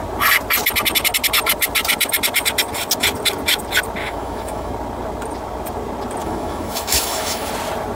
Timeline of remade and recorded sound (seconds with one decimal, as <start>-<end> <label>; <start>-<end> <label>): 0.0-4.0 recorded; 4.0-4.7 remade; 4.7-6.2 recorded; 6.2-7.5 remade; 7.5-7.9 recorded